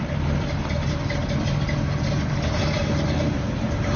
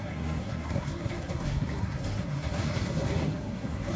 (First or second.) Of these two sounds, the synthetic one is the second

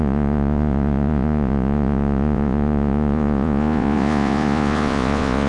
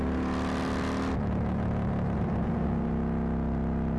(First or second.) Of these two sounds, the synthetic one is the first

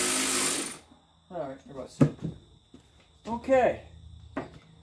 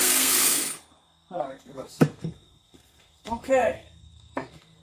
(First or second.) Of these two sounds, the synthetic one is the second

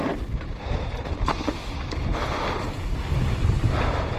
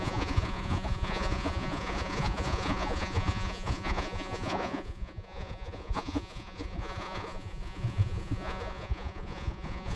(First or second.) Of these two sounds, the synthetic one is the second